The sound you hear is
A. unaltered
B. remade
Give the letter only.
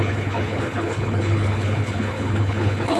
B